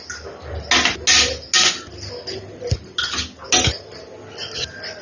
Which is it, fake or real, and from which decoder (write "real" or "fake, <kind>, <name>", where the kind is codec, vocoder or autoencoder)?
real